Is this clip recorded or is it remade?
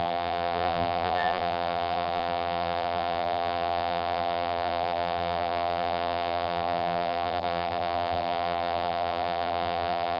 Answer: remade